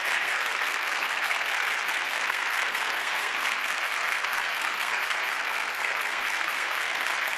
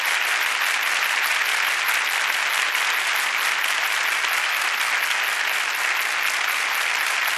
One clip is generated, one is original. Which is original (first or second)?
second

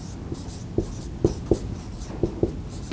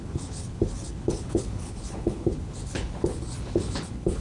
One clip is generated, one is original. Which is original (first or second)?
first